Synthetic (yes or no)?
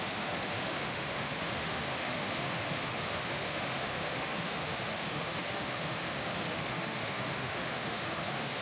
yes